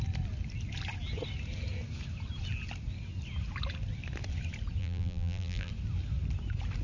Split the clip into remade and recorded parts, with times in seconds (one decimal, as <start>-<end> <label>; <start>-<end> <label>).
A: 0.0-4.8 recorded; 4.8-5.7 remade; 5.7-6.8 recorded